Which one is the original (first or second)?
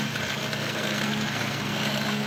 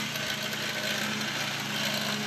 second